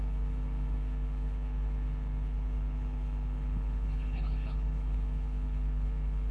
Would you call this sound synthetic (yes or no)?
yes